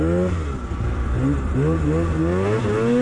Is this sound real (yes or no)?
yes